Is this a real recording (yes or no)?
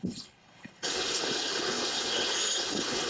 no